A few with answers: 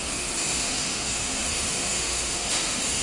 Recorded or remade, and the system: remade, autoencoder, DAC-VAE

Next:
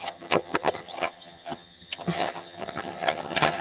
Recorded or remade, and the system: remade, vocoder, HiFi-GAN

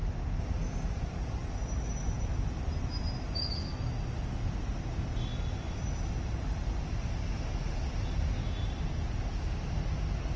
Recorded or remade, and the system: recorded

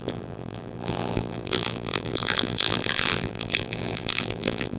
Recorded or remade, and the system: remade, vocoder, BigVGAN v2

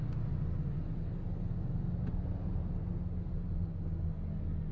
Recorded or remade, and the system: recorded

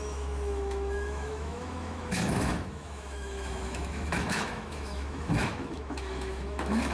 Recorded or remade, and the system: remade, autoencoder, DAC-VAE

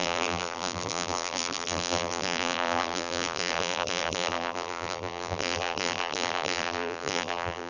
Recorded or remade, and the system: remade, vocoder, BigVGAN v2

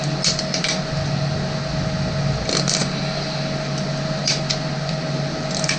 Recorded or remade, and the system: recorded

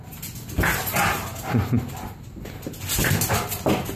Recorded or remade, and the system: recorded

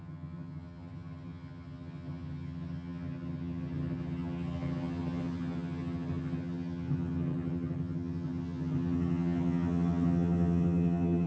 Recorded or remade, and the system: remade, vocoder, HiFi-GAN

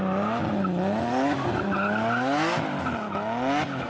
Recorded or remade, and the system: recorded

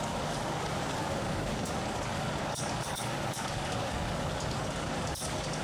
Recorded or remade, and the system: remade, codec, DAC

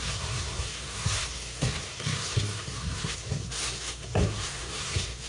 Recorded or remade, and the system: remade, codec, SNAC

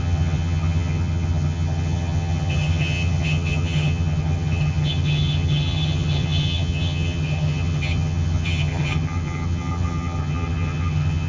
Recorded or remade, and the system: remade, vocoder, HiFi-GAN